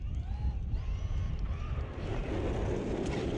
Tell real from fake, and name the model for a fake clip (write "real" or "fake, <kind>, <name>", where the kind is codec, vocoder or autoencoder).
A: real